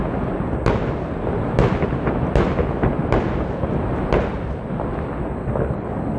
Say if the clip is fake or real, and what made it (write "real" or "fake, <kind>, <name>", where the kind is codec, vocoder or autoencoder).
real